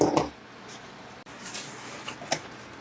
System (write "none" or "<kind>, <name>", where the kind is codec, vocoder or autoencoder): none